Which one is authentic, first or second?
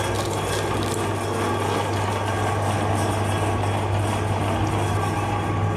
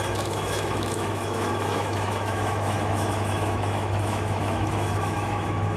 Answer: first